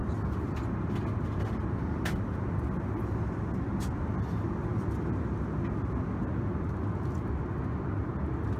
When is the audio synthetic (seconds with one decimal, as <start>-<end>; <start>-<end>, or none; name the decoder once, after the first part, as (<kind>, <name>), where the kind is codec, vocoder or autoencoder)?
none